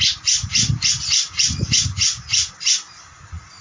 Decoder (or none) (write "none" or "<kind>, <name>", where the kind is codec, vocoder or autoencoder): none